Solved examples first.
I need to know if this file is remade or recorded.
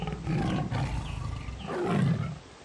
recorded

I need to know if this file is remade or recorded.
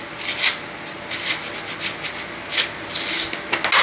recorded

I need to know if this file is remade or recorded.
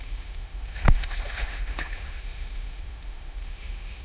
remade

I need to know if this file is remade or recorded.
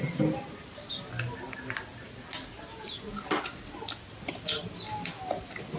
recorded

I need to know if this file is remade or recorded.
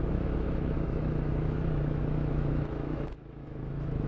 remade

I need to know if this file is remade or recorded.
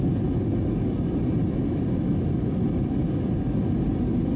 recorded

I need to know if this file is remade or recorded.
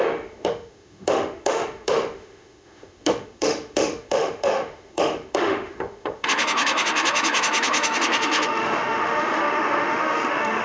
remade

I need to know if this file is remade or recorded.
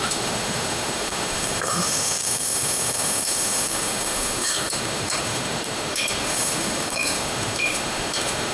remade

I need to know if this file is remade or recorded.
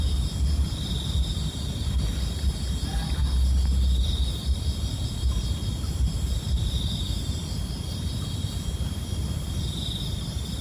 recorded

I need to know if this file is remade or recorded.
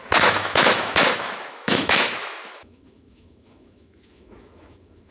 remade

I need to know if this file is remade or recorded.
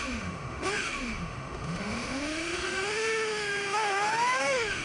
remade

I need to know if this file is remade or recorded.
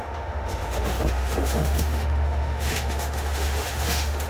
remade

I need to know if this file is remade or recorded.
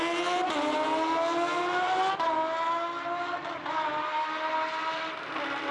recorded